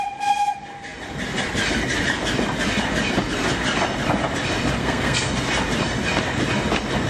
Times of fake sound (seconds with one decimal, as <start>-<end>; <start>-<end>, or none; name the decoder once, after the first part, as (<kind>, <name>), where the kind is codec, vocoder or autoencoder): 4.8-5.3 (codec, SNAC)